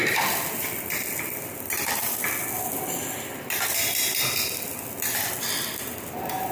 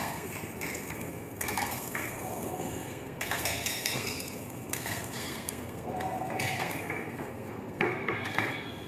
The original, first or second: first